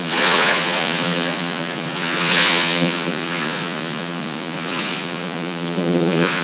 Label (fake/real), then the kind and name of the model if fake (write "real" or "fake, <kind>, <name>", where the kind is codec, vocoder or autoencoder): fake, vocoder, Vocos